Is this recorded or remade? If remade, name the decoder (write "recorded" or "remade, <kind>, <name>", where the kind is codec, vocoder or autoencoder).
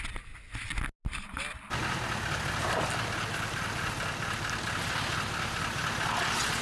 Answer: recorded